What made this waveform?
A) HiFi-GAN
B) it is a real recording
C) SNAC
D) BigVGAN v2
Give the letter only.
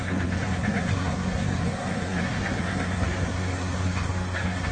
C